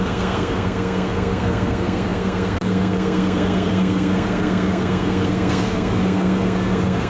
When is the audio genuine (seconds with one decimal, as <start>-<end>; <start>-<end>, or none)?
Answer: none